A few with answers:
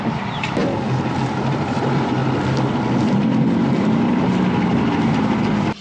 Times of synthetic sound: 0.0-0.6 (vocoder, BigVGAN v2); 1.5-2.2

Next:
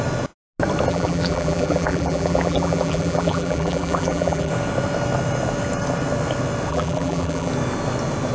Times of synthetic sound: 0.9-4.5 (vocoder, BigVGAN v2); 6.7-7.5

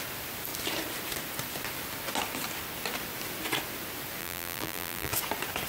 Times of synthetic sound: 4.2-5.1 (vocoder, BigVGAN v2)

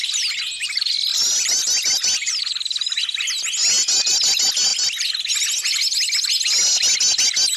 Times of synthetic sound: 1.1-2.4 (vocoder, BigVGAN v2); 4.7-5.3

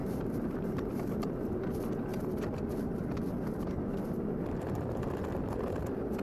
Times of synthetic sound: 0.0-1.6 (vocoder, BigVGAN v2)

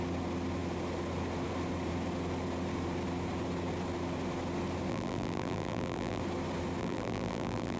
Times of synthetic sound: 4.9-6.2 (vocoder, BigVGAN v2); 6.8-7.8